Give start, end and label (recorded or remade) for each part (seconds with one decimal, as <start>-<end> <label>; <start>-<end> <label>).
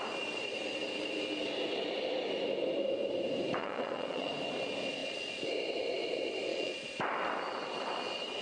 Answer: 0.0-3.6 recorded; 3.6-4.3 remade; 4.3-6.5 recorded; 6.5-7.0 remade; 7.0-8.4 recorded